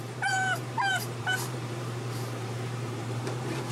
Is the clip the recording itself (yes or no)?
no